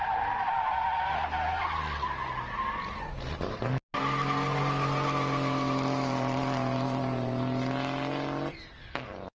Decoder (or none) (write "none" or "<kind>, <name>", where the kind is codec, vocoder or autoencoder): none